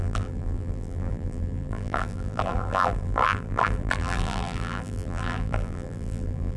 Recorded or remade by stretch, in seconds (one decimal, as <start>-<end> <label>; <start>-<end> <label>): 0.0-6.6 remade